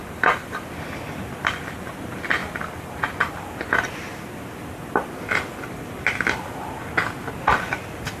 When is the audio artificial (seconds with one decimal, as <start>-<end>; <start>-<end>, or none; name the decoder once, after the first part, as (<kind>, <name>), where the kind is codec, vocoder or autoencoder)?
none